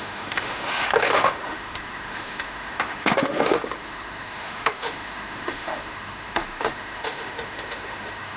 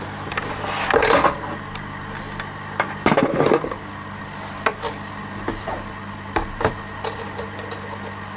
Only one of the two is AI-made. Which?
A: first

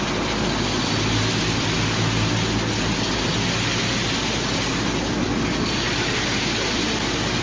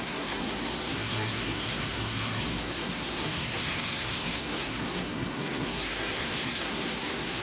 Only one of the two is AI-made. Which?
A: second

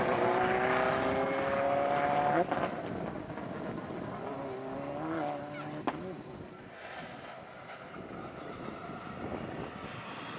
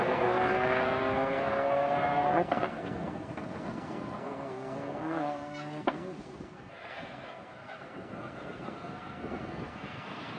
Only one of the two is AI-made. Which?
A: second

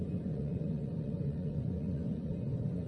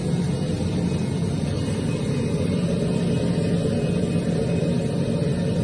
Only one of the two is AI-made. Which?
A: first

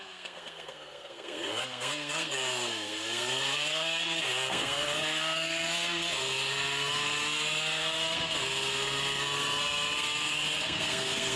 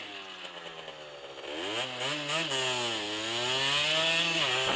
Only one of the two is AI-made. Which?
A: first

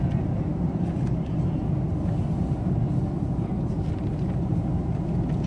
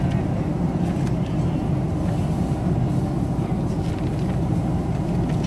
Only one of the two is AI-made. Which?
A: first